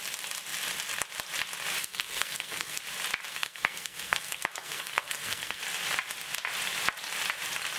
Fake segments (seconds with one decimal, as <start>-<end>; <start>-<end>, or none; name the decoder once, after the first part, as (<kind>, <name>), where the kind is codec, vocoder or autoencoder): 1.8-2.8 (codec, SNAC); 3.3-5.6